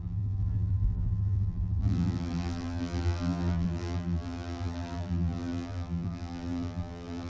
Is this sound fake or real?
fake